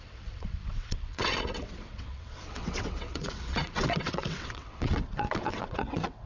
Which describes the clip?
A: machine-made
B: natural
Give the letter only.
A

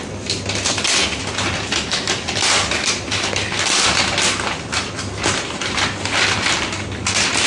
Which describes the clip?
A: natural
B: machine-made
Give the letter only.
A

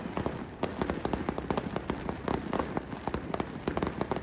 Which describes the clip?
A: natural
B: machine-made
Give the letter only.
A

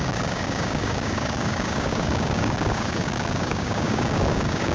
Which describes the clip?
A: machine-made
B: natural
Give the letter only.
A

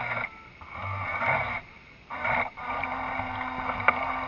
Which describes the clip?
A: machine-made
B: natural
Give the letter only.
B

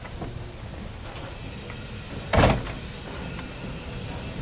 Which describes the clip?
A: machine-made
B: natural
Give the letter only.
B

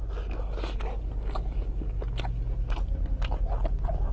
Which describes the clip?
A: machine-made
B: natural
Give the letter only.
B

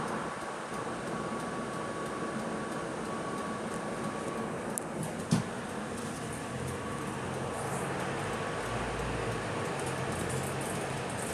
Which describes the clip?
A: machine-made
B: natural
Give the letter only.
B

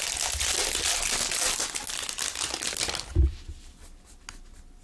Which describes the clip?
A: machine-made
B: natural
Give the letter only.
B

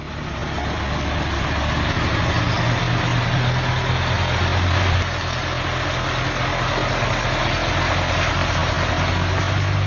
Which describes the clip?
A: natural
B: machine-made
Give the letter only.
A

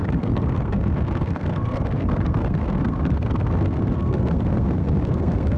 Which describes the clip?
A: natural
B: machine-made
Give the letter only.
B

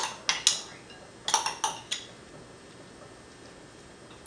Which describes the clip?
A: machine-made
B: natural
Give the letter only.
B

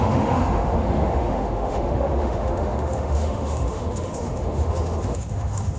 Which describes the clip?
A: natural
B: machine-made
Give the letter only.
B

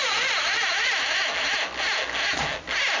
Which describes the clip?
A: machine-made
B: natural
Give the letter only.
B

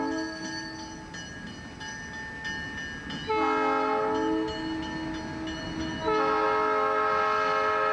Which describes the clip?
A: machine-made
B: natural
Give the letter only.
B